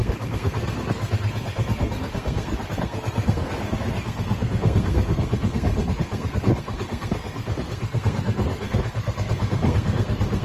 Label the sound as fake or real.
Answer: fake